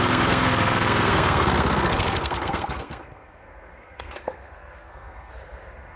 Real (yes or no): no